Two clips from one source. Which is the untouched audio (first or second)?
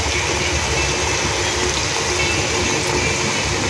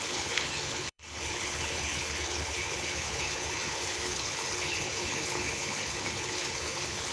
first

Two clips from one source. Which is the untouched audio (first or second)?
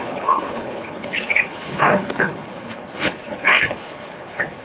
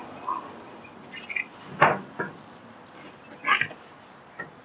second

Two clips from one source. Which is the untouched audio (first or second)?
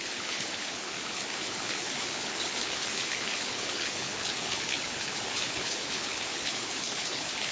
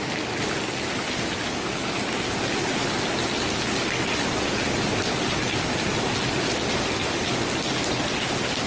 second